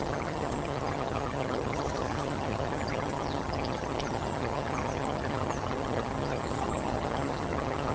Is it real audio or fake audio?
fake